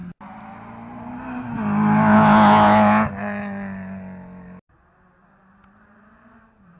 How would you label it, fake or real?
real